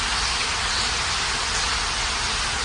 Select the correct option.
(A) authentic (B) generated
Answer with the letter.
A